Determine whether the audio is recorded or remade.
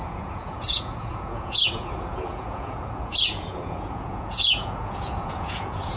remade